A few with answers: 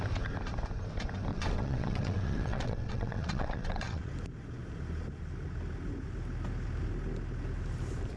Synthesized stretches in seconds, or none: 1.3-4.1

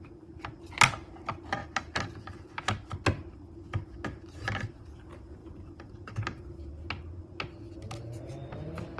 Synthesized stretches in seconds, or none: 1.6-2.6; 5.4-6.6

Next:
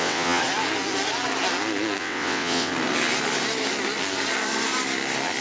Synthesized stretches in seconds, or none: 0.0-0.4; 2.0-2.7

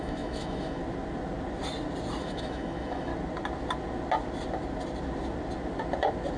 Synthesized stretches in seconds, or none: 0.0-0.8; 2.2-3.1

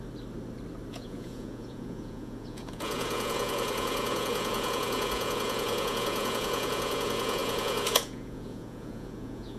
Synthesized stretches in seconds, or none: 0.9-9.6

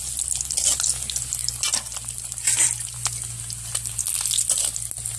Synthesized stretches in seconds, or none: none